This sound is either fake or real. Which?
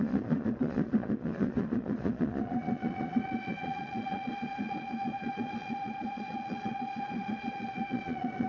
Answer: fake